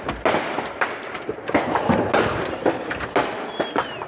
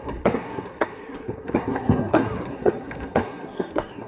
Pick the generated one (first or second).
second